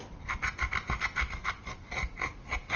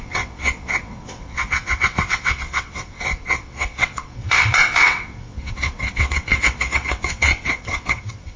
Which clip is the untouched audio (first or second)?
first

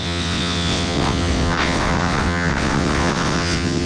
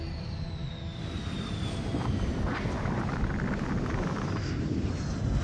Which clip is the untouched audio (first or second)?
second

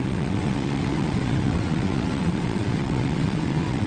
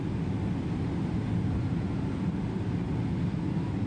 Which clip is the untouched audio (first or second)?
second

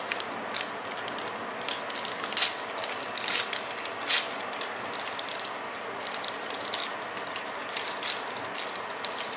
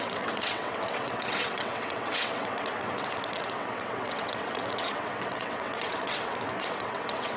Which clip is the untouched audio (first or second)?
first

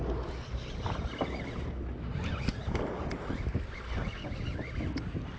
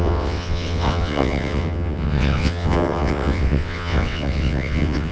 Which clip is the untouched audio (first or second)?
first